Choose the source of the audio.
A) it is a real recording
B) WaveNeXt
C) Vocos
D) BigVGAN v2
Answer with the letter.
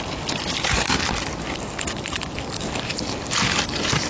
D